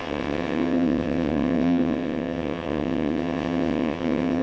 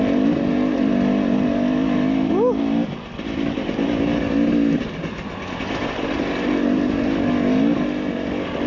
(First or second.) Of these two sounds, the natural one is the second